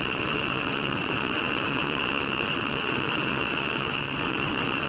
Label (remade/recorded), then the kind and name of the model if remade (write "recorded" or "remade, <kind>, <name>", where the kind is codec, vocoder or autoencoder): remade, vocoder, WaveNeXt